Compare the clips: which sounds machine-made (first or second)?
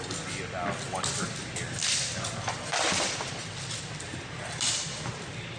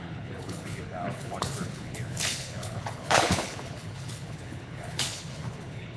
second